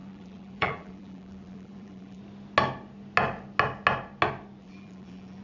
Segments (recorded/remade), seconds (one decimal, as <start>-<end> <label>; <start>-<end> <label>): 0.0-2.2 remade; 2.2-4.6 recorded; 4.6-5.4 remade